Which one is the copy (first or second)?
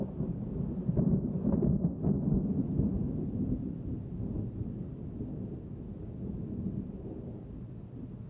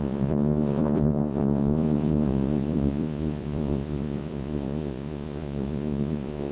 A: second